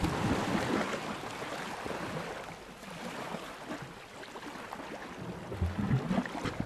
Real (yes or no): yes